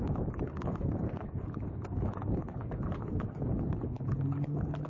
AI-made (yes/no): yes